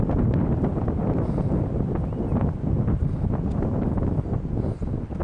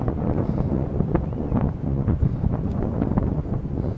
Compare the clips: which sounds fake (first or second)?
second